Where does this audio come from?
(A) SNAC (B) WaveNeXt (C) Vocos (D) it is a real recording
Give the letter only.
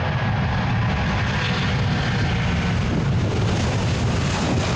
D